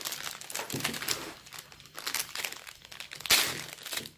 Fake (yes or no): no